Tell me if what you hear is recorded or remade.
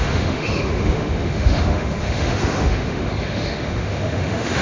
remade